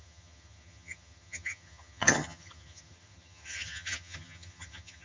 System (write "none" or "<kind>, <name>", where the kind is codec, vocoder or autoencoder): vocoder, HiFi-GAN